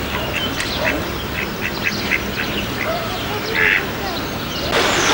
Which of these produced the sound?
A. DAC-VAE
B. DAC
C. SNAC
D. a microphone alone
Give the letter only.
D